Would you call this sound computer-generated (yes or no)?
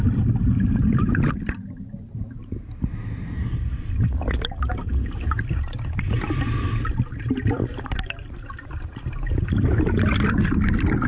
no